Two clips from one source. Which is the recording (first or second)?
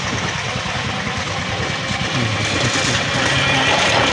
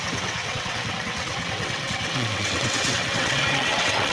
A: first